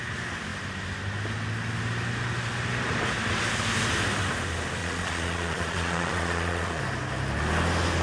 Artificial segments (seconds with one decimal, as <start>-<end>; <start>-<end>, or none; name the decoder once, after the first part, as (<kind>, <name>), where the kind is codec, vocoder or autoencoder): 4.8-6.8 (vocoder, Vocos)

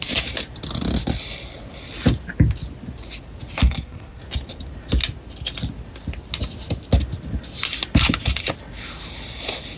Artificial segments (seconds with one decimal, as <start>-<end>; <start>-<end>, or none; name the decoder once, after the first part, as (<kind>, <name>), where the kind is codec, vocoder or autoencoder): 3.6-4.2 (codec, SNAC)

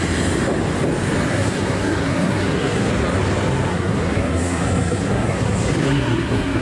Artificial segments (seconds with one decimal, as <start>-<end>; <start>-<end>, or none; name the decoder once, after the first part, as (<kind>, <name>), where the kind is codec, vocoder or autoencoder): 1.3-2.9 (codec, SNAC); 3.7-6.6

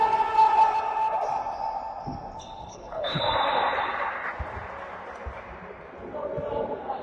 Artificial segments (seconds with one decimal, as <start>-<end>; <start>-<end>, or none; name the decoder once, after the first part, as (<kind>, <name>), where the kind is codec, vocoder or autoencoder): 2.6-3.2 (codec, HILCodec)

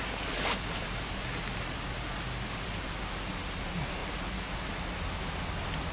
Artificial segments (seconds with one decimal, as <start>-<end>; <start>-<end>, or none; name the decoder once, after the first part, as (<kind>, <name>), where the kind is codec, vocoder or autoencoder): none

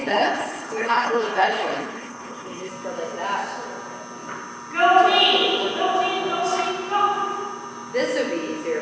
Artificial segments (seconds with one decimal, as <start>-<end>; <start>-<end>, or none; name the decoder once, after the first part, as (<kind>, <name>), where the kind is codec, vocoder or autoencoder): 0.0-2.7 (codec, HILCodec)

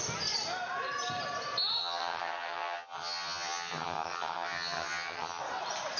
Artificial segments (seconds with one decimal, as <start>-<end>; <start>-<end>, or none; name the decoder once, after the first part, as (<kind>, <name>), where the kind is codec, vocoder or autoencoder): 1.8-5.4 (vocoder, HiFi-GAN)

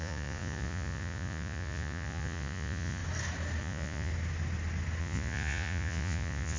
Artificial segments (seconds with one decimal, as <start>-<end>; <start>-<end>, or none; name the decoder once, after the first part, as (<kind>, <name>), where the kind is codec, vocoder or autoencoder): 0.0-3.0 (vocoder, Vocos); 3.6-4.1; 5.0-6.6